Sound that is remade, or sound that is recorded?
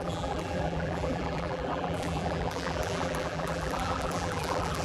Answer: remade